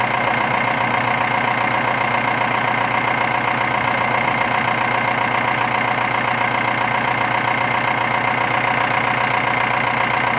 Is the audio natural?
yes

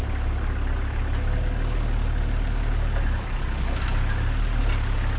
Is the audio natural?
yes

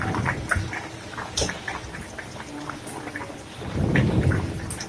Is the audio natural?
yes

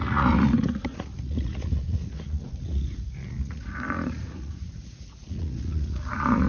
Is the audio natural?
no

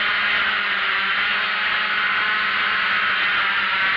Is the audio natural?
yes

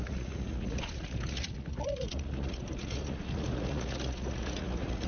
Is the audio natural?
no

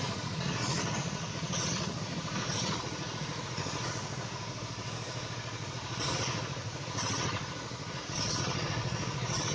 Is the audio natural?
no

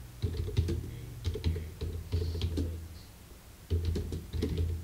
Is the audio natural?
yes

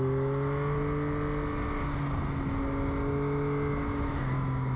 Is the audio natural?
yes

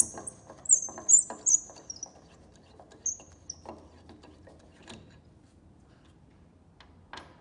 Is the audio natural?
yes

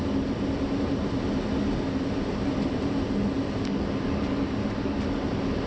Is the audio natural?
yes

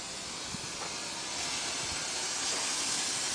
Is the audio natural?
yes